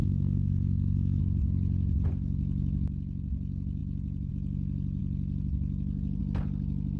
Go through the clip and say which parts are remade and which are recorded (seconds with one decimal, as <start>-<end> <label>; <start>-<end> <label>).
0.0-1.2 remade; 1.2-7.0 recorded

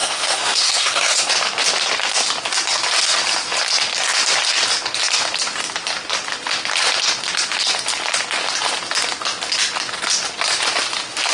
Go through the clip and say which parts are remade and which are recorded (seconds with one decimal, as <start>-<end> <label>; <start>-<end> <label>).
0.0-1.3 remade; 1.3-11.3 recorded

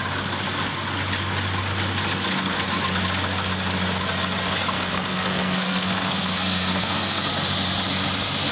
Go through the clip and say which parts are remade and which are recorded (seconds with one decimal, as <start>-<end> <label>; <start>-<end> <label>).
0.0-4.6 recorded; 4.6-7.3 remade; 7.3-8.5 recorded

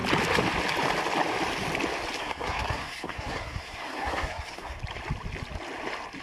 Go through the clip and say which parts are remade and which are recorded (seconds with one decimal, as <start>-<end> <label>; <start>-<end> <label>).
0.0-2.2 recorded; 2.2-4.8 remade; 4.8-6.2 recorded

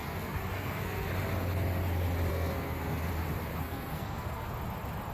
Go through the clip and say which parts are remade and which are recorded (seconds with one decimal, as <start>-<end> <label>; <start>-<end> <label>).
0.0-1.1 remade; 1.1-2.3 recorded; 2.3-3.1 remade; 3.1-3.5 recorded; 3.5-4.5 remade; 4.5-5.1 recorded